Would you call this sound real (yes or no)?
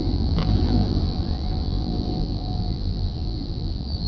no